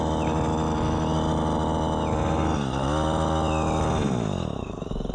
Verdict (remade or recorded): recorded